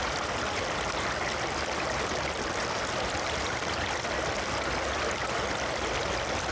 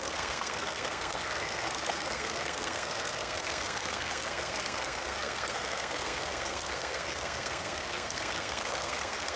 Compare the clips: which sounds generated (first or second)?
second